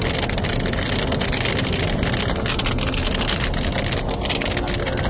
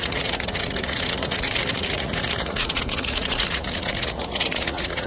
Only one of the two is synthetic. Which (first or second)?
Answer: second